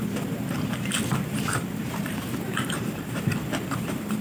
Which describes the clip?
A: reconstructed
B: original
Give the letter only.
A